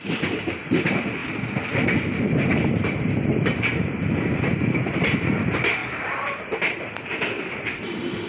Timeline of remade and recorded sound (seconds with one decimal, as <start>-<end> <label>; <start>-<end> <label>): 0.0-8.3 recorded